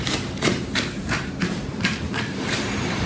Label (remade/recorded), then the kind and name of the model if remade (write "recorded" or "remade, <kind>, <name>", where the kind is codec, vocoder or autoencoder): remade, vocoder, BigVGAN v2